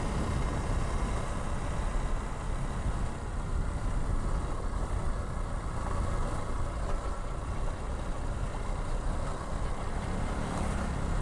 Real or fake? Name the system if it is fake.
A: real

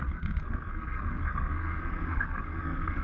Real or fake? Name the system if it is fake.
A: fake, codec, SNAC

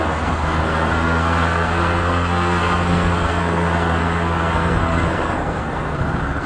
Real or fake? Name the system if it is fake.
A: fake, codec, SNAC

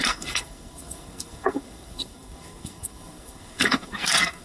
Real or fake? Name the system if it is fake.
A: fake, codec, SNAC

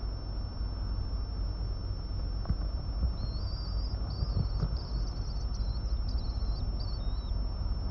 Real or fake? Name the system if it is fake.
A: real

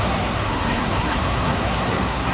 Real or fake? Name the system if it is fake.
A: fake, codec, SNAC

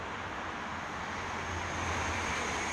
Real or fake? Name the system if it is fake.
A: real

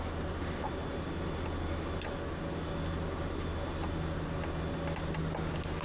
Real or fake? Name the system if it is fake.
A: real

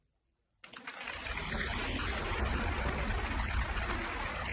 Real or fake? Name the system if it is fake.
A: real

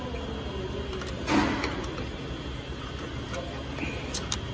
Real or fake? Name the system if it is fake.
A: real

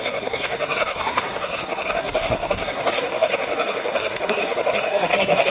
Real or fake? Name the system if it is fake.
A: fake, codec, SNAC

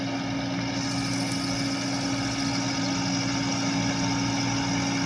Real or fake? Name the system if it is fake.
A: real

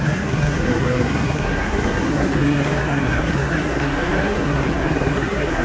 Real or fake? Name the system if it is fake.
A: fake, codec, SNAC